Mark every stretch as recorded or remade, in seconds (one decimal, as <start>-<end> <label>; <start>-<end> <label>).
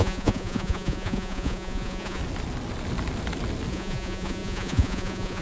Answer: 0.0-2.2 remade; 2.2-3.7 recorded; 3.7-5.4 remade